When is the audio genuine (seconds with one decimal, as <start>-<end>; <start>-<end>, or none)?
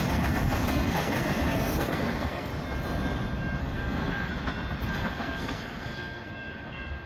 2.5-3.6; 4.3-4.9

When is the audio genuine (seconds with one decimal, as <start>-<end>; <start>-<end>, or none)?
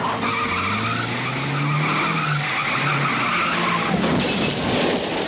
0.0-5.3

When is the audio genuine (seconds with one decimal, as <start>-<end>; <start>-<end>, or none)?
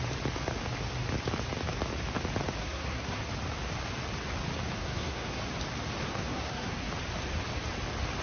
0.0-2.6; 3.2-4.8; 5.4-6.0; 6.9-8.2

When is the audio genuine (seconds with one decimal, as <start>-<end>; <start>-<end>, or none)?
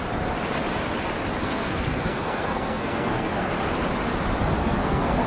0.0-1.4; 3.5-4.6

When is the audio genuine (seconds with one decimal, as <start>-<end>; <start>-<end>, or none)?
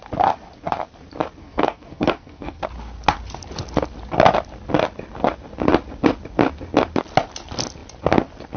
0.0-1.4; 2.6-8.6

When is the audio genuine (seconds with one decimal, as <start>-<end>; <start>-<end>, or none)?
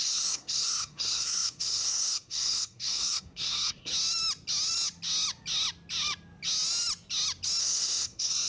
3.9-7.6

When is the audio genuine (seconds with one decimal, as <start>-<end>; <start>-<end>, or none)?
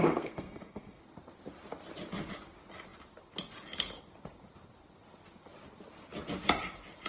1.0-7.1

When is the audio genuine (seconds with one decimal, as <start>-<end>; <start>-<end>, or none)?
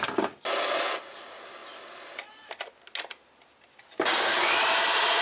0.0-5.2